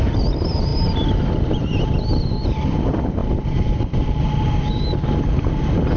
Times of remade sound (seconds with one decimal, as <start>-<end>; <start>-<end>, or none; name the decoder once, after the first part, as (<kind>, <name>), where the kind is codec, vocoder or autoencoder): none